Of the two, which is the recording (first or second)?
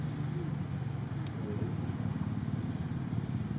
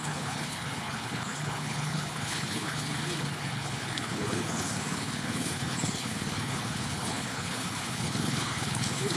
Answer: first